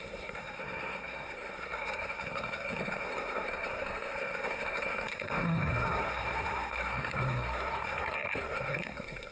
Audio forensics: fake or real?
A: fake